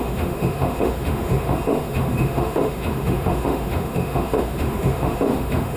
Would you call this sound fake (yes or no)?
yes